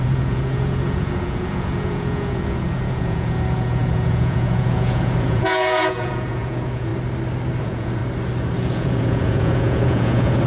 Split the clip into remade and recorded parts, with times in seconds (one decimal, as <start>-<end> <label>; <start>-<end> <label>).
0.0-6.9 remade; 6.9-7.6 recorded; 7.6-8.0 remade; 8.0-8.6 recorded; 8.6-10.5 remade